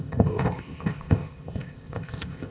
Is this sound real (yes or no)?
no